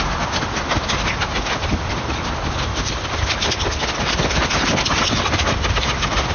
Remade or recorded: remade